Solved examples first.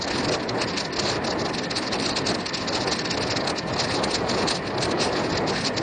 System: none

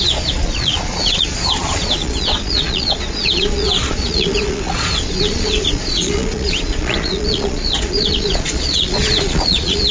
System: vocoder, Vocos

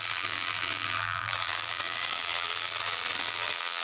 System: vocoder, BigVGAN v2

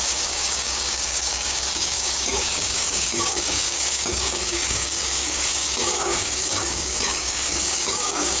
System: codec, DAC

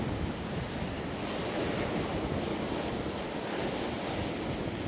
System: none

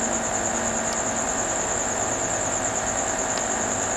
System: none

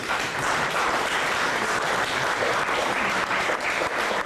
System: vocoder, BigVGAN v2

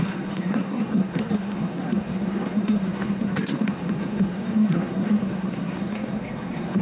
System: codec, SNAC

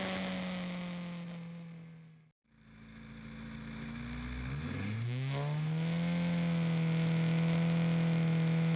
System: none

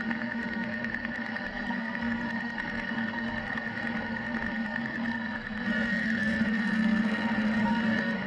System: codec, SNAC